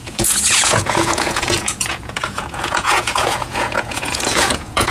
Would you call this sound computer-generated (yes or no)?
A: yes